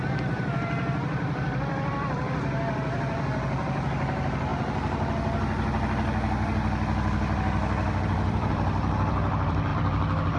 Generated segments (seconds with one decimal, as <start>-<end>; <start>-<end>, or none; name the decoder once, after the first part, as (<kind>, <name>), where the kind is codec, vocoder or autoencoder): 0.0-4.5 (vocoder, BigVGAN v2); 8.0-10.4